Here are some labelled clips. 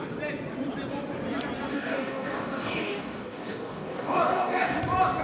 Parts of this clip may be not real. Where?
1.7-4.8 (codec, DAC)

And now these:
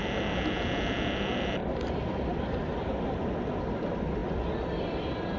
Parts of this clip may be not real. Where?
none

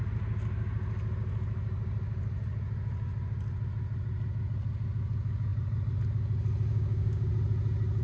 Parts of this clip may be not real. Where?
6.7-7.3 (codec, DAC)

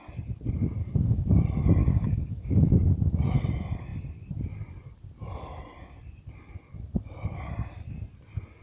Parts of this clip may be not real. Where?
0.8-1.3 (codec, DAC); 1.8-2.7